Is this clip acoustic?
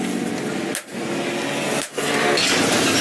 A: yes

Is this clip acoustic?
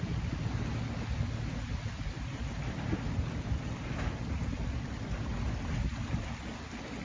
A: yes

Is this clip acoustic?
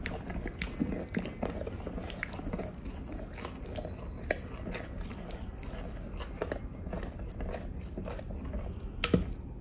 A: yes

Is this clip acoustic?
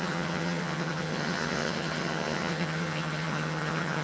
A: no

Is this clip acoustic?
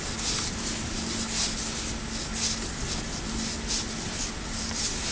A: yes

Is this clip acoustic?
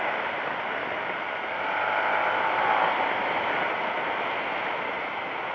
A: yes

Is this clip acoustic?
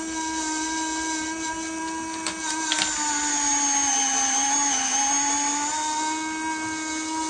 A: yes